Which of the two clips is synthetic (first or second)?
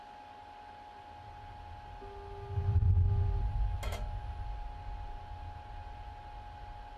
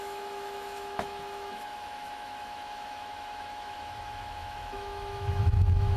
second